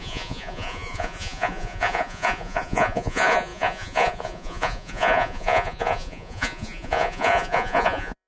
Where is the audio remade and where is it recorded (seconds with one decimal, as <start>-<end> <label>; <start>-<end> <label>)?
0.0-8.3 remade